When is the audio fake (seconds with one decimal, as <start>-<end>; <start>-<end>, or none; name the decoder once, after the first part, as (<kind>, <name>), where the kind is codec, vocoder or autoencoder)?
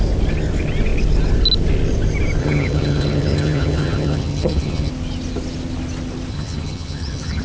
2.4-4.9 (vocoder, HiFi-GAN); 6.3-7.4